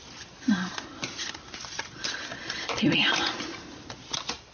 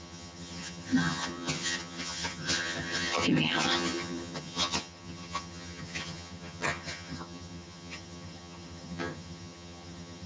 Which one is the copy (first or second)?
second